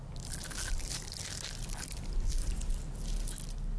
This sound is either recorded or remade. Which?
recorded